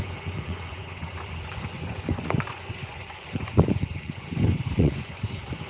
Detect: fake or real fake